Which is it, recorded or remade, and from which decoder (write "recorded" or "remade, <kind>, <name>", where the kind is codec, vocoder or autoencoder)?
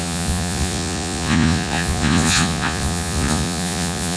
remade, vocoder, Vocos